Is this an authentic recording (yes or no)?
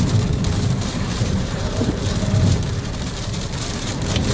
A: no